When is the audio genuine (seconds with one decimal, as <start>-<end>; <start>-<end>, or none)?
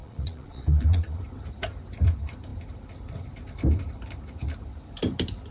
1.2-5.5